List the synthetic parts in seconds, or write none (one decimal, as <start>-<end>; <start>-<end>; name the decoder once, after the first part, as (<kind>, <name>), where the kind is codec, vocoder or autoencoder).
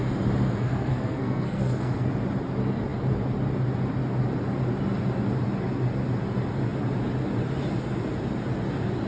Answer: 0.6-2.1 (codec, SNAC)